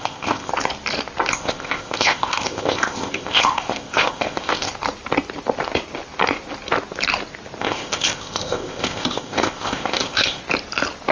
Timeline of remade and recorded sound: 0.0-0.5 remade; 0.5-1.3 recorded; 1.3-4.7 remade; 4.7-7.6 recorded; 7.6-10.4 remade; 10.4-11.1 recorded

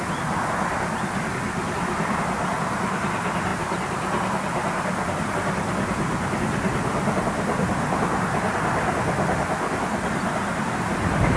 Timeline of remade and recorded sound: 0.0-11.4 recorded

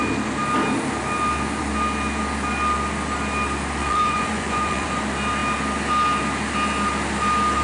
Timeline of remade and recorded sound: 0.0-3.8 recorded; 3.8-5.0 remade; 5.0-7.6 recorded

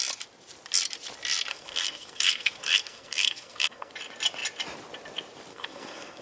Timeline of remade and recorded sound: 0.0-1.5 recorded; 1.5-3.9 remade; 3.9-5.5 recorded; 5.5-6.2 remade

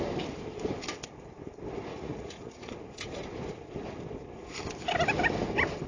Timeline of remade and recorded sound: 0.0-1.9 recorded; 1.9-2.7 remade; 2.7-5.9 recorded